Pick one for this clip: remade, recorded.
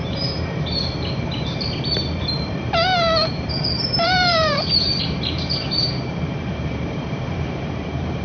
remade